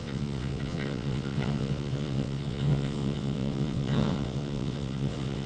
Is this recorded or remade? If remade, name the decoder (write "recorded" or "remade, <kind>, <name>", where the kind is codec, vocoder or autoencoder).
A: remade, vocoder, WaveNeXt